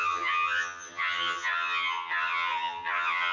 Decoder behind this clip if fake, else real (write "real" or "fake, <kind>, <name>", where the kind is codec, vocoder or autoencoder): fake, vocoder, HiFi-GAN